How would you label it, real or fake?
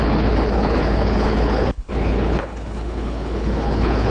fake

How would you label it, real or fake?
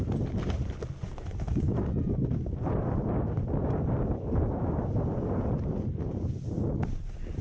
real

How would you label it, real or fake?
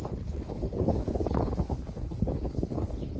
fake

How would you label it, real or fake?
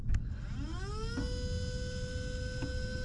real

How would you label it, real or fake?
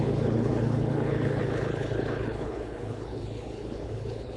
fake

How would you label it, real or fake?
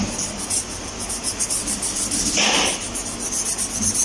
real